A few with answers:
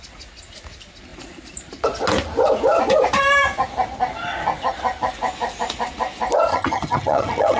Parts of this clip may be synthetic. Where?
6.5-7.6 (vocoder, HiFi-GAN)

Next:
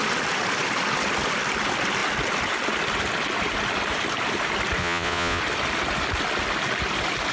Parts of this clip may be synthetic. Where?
4.8-5.4 (vocoder, Vocos)

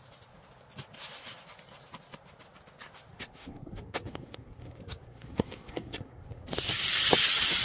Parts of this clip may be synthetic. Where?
3.1-6.5 (codec, SNAC)

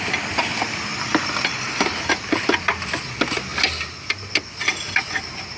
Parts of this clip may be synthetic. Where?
0.9-1.7 (vocoder, BigVGAN v2)

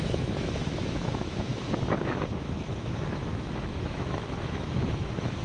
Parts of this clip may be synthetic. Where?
0.0-1.5 (autoencoder, DAC-VAE); 2.0-5.4

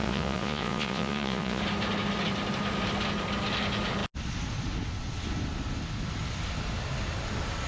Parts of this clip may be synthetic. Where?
0.0-1.6 (vocoder, Vocos)

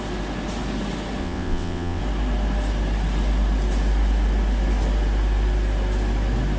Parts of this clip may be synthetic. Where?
1.2-2.0 (vocoder, WaveNeXt)